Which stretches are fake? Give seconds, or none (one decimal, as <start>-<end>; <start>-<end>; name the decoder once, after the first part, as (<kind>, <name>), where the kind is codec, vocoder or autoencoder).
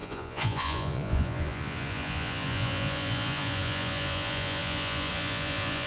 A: 0.0-5.9 (vocoder, Vocos)